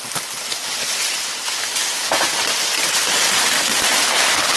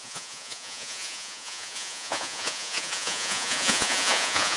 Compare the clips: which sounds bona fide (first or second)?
first